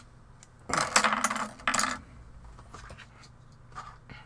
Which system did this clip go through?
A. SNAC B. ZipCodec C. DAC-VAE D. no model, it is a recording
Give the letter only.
D